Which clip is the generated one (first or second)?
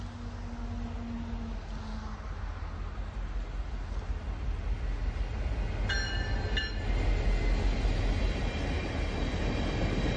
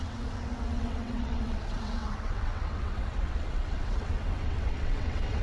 second